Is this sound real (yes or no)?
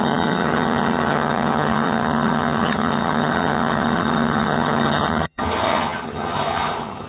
no